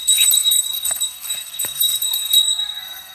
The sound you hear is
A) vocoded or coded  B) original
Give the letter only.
A